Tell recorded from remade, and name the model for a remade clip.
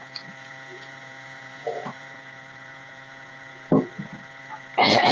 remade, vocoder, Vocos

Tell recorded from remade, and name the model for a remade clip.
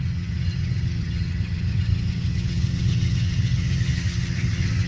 remade, vocoder, HiFi-GAN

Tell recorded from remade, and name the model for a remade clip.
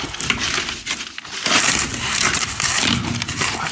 recorded